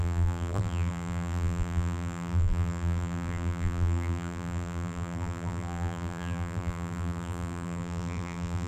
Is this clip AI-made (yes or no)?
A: yes